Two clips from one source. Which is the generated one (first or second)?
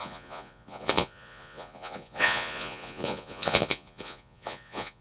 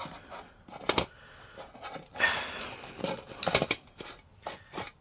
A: first